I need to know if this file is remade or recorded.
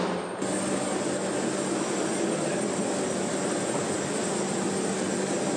recorded